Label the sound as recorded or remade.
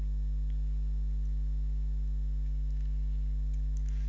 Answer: recorded